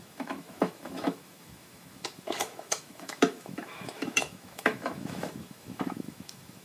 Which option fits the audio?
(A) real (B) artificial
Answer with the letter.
B